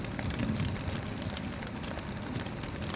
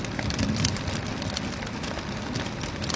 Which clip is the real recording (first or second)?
second